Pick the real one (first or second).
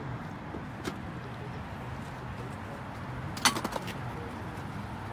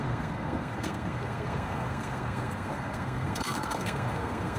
first